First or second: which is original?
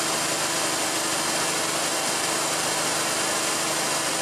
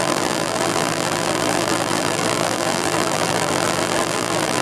first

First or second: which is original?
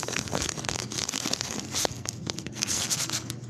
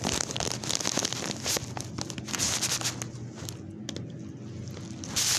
second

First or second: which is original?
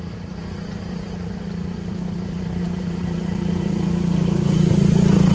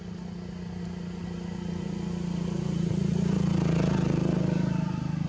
second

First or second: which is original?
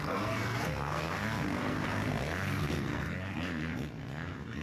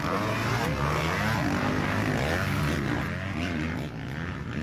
second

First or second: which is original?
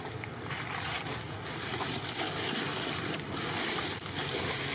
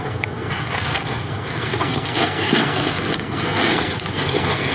first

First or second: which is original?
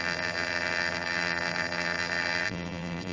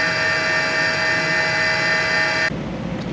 second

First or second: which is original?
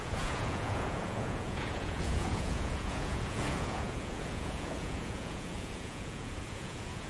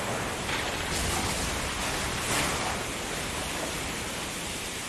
second